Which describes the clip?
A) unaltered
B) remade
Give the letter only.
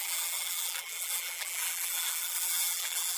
B